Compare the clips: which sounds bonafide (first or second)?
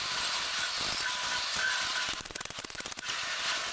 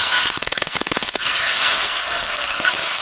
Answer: first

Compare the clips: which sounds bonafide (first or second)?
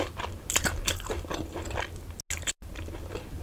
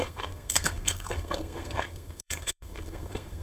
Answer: first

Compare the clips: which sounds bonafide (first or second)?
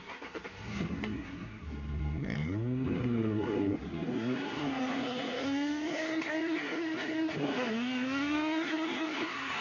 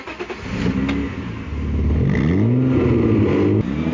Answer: second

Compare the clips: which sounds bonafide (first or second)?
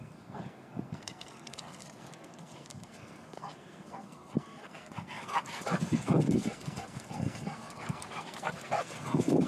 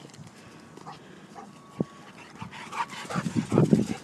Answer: second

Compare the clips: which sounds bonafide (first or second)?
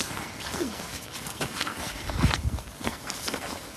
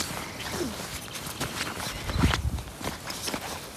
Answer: second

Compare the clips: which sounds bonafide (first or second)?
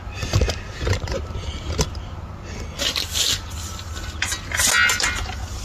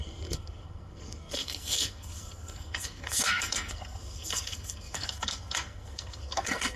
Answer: first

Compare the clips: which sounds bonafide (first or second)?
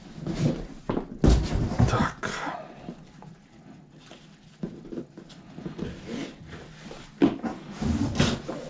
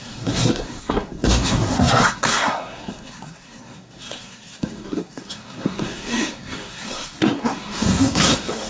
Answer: first